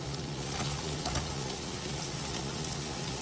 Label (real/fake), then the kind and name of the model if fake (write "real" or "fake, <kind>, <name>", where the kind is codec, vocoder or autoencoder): fake, vocoder, Vocos